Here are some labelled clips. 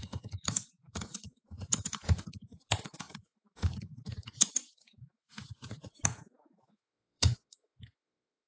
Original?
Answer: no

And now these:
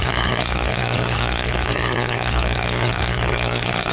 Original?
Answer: no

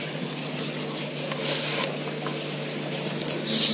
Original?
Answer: yes